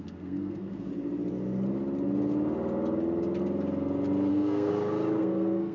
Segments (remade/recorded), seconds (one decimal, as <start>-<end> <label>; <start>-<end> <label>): 0.0-0.9 remade; 0.9-4.3 recorded; 4.3-4.7 remade; 4.7-5.2 recorded; 5.2-5.7 remade